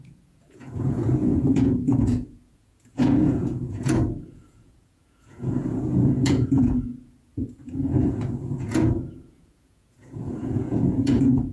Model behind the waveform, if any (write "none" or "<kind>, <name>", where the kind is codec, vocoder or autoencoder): vocoder, Vocos